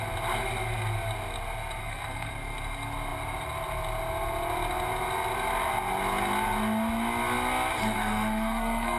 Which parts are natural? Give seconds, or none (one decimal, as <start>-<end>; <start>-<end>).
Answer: 0.0-1.8; 2.3-7.8